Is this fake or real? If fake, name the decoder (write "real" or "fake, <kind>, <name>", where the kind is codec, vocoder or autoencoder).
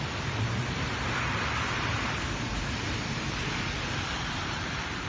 fake, vocoder, BigVGAN v2